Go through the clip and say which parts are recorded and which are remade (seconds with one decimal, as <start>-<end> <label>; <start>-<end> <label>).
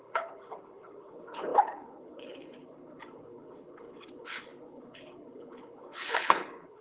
0.0-6.8 remade